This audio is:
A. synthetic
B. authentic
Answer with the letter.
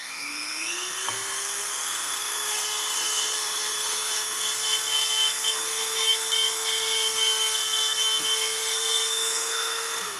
A